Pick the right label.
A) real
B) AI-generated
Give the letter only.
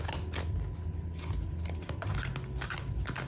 A